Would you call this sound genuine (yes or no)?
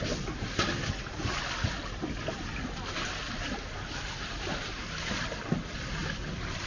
yes